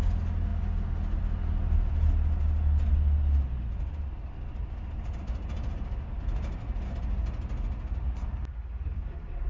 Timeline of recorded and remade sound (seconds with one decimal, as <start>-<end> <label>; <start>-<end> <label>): 0.0-9.5 recorded